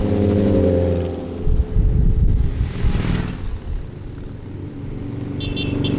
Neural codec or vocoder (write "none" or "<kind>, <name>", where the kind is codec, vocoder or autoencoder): none